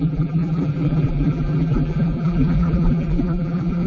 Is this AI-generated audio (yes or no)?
yes